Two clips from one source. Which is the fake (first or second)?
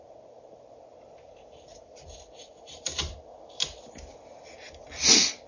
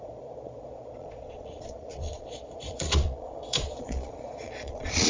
second